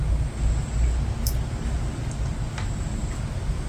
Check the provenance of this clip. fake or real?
real